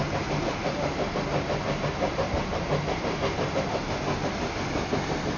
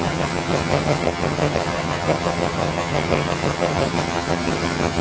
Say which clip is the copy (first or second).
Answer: second